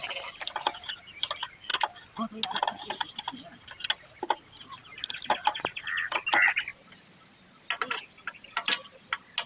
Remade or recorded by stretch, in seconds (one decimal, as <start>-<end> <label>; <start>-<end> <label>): 0.0-9.5 recorded